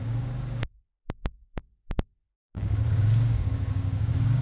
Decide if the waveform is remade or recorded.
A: remade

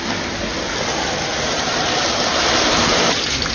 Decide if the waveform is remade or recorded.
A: recorded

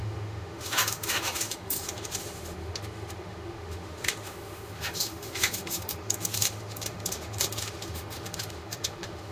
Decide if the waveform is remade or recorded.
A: remade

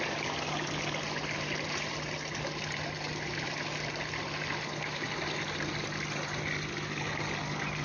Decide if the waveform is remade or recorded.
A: recorded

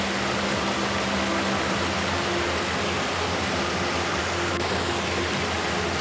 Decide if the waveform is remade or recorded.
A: recorded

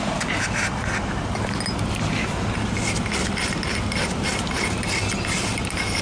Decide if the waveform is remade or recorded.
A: recorded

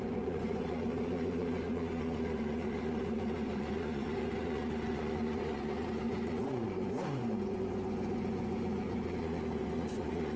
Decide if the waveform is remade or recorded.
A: remade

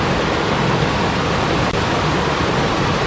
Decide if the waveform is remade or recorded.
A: recorded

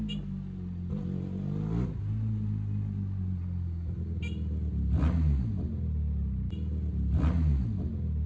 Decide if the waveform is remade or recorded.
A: recorded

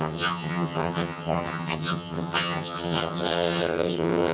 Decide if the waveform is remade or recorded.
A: remade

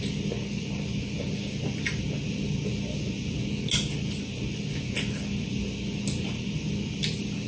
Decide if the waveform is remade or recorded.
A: recorded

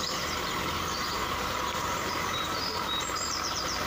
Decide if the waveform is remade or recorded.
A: remade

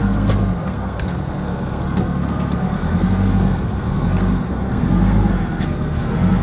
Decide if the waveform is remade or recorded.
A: remade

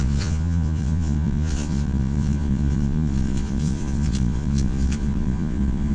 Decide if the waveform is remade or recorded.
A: remade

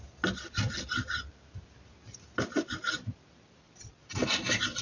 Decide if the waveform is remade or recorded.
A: recorded